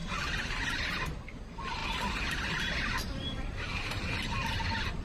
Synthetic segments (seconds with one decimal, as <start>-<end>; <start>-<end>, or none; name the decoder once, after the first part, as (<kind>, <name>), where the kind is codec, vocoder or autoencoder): none